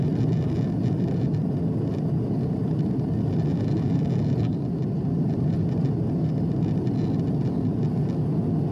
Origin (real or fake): fake